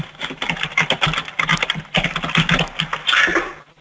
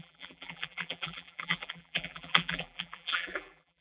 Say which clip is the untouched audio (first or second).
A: first